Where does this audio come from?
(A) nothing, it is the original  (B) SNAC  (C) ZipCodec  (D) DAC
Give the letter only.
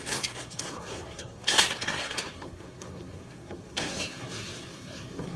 B